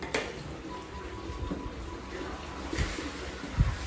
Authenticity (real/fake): real